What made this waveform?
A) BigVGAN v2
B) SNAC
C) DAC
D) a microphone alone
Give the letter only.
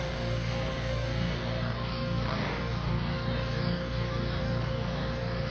C